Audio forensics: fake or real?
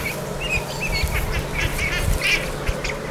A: real